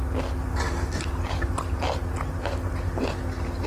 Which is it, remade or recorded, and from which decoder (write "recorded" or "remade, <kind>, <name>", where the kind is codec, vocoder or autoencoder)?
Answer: recorded